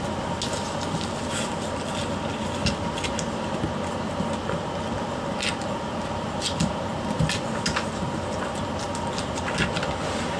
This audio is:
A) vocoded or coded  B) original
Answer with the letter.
B